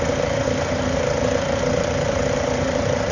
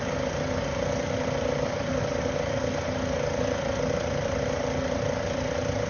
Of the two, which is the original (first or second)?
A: second